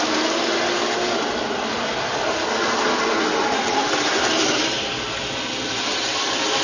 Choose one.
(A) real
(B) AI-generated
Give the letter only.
A